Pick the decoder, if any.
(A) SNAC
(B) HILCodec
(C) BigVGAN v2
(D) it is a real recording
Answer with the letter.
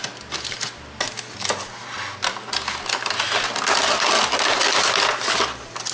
D